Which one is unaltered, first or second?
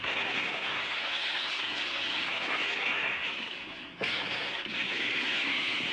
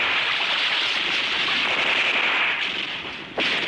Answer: second